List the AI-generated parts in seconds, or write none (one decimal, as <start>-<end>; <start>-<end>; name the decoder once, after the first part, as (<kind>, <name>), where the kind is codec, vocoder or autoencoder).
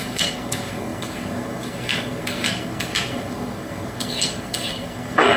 0.0-5.4 (codec, SNAC)